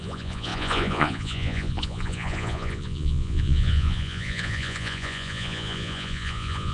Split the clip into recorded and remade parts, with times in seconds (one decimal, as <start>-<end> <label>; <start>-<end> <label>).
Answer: 0.0-6.7 remade